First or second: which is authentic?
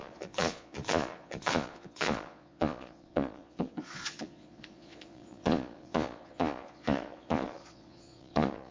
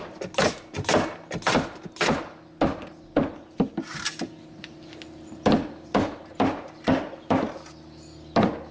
second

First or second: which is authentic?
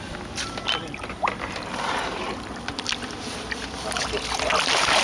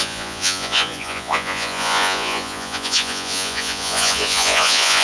first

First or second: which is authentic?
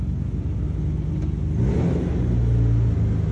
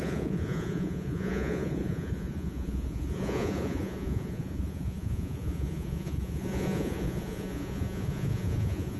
first